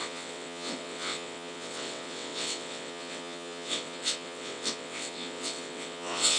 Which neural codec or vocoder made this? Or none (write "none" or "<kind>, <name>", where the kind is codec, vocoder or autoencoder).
vocoder, WaveNeXt